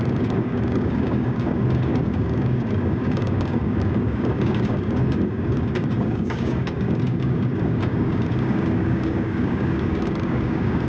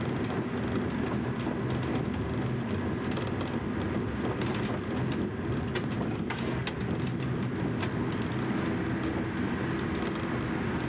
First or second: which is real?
second